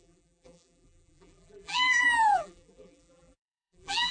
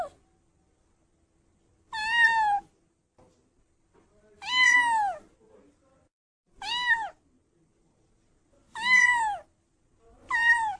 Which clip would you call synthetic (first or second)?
first